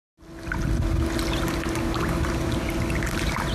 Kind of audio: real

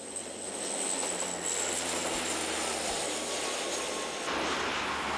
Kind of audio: real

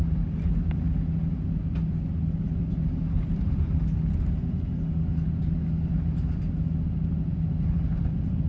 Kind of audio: real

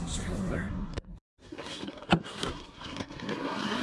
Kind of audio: fake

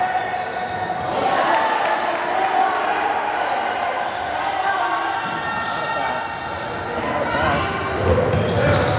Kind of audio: real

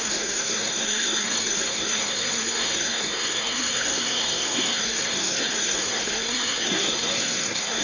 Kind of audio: fake